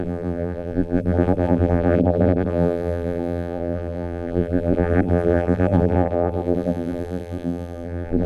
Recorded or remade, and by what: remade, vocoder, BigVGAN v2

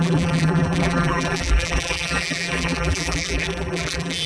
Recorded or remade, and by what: remade, vocoder, BigVGAN v2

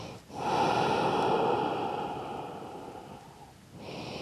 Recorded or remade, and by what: recorded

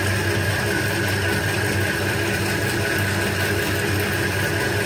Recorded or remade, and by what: recorded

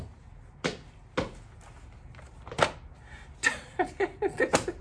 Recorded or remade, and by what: recorded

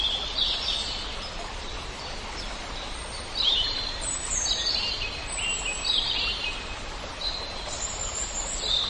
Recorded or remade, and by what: remade, vocoder, BigVGAN v2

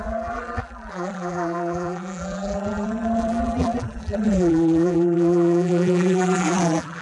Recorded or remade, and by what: remade, vocoder, BigVGAN v2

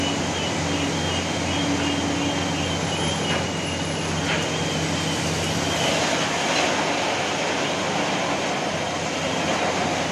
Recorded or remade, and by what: recorded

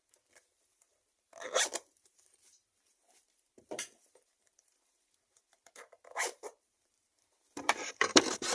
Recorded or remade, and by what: remade, vocoder, BigVGAN v2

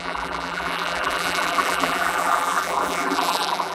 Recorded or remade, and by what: remade, vocoder, BigVGAN v2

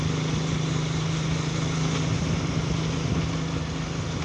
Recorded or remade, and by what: recorded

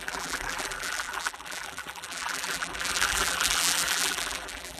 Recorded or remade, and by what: remade, vocoder, BigVGAN v2